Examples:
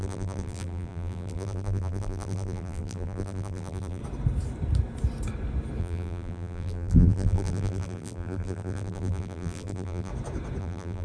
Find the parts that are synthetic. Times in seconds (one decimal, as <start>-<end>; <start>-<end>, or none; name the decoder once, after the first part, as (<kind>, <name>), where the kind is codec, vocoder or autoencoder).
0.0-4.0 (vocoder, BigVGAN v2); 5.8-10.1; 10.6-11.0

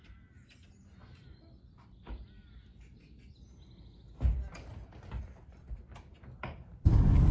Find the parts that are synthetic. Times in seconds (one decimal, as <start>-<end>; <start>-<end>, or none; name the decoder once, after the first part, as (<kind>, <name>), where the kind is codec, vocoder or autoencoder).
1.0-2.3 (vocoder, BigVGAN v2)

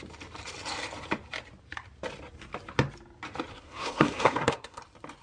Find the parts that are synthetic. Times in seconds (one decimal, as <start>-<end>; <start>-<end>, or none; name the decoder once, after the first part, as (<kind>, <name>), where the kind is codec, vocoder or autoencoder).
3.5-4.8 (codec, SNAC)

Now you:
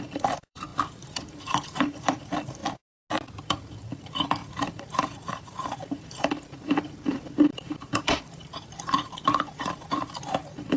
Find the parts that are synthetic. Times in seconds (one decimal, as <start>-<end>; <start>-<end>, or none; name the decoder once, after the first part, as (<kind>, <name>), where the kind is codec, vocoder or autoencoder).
0.0-2.6 (vocoder, BigVGAN v2); 3.4-10.8

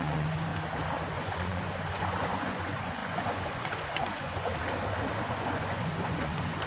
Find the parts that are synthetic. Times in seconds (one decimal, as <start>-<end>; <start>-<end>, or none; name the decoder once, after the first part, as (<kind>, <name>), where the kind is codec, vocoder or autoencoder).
0.0-0.5 (vocoder, Vocos); 1.1-4.5; 5.2-6.7

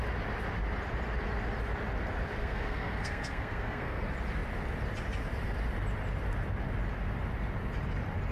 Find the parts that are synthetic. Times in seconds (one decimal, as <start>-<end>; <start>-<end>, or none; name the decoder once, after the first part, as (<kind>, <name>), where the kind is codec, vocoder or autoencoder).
2.4-4.0 (codec, SNAC)